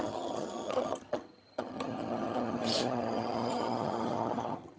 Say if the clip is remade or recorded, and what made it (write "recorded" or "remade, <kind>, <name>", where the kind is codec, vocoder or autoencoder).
remade, vocoder, HiFi-GAN